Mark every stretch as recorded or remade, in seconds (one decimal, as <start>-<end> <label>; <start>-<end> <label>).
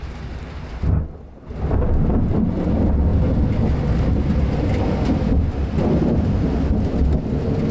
0.0-7.7 recorded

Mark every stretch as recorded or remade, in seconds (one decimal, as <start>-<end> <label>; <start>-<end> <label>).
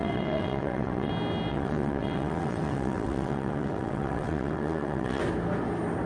0.0-1.1 remade; 1.1-1.5 recorded; 1.5-5.2 remade; 5.2-6.1 recorded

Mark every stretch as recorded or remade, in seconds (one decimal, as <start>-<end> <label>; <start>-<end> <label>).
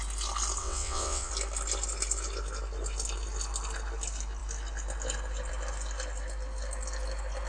0.0-0.6 recorded; 0.6-1.3 remade; 1.3-7.5 recorded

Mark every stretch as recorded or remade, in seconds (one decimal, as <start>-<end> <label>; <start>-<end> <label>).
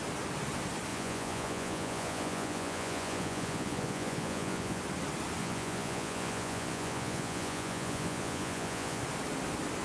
0.0-0.9 recorded; 0.9-4.8 remade; 4.8-5.4 recorded; 5.4-9.0 remade; 9.0-9.8 recorded